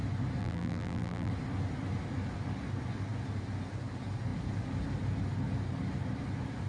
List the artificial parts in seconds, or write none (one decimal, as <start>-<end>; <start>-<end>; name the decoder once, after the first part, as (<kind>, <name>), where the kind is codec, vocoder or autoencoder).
0.4-1.3 (vocoder, BigVGAN v2)